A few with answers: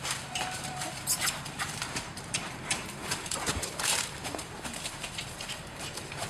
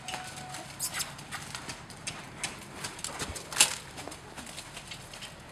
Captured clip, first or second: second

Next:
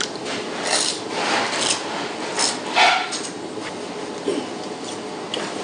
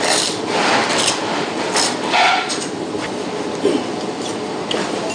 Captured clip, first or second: first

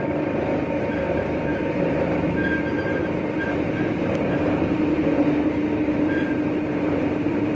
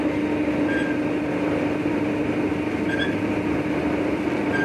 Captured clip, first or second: second